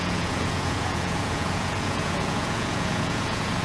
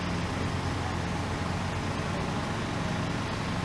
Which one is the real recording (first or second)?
second